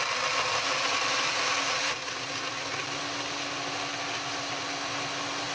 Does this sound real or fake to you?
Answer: real